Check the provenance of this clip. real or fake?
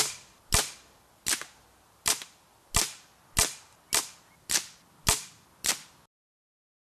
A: real